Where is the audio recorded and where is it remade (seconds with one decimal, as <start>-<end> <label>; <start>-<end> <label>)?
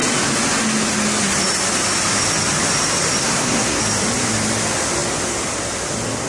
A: 0.0-3.2 recorded; 3.2-3.8 remade; 3.8-6.3 recorded